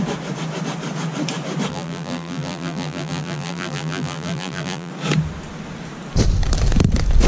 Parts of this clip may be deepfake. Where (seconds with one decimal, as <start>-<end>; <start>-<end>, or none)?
1.7-4.9